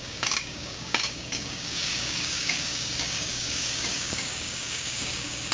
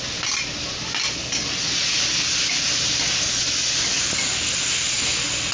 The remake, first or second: first